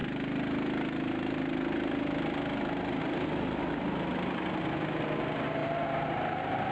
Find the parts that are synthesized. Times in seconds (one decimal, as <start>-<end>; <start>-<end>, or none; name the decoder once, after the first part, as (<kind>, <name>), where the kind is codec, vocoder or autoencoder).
none